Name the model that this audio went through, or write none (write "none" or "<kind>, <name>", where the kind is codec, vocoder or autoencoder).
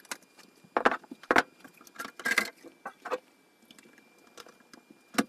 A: none